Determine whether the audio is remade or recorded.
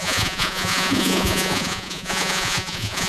remade